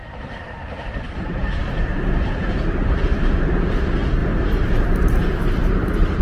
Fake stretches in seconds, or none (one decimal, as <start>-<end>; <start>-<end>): 0.0-3.7; 4.2-6.2